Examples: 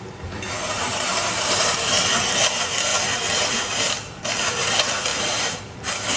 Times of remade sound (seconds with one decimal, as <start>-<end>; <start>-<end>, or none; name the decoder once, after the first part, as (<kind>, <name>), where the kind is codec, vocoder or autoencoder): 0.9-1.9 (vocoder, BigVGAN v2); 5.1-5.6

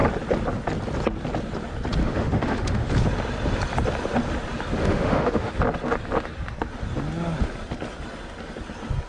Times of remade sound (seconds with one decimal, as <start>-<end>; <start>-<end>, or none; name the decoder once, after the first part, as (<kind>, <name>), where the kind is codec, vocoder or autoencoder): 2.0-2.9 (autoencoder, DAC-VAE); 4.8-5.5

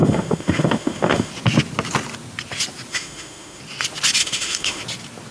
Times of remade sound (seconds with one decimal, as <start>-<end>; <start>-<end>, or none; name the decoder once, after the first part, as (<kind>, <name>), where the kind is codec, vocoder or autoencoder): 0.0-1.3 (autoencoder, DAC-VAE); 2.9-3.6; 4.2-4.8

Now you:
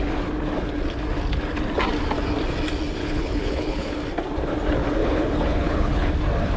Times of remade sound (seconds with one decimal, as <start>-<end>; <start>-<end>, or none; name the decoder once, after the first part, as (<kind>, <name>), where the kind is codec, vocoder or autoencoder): 3.0-4.0 (codec, HILCodec); 5.0-6.1